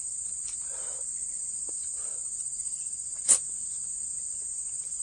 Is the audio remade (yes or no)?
no